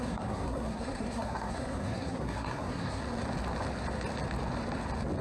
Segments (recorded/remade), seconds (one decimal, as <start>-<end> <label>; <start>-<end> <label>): 0.0-3.0 remade; 3.0-5.2 recorded